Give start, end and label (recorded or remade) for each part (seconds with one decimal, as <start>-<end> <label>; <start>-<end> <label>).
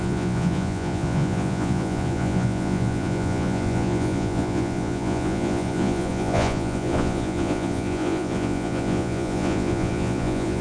0.0-10.6 remade